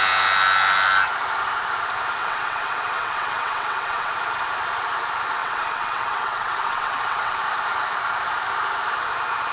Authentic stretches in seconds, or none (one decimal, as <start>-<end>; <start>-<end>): 0.0-2.2; 4.1-5.4; 7.4-9.5